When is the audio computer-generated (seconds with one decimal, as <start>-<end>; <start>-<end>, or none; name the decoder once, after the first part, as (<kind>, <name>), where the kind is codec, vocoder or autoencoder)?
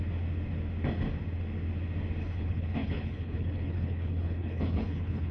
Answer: 2.2-5.3 (codec, HILCodec)